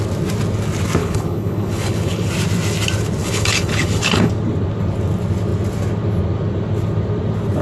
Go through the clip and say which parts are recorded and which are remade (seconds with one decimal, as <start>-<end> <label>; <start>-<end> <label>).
0.0-1.0 recorded; 1.0-2.3 remade; 2.3-3.2 recorded; 3.2-4.3 remade; 4.3-7.6 recorded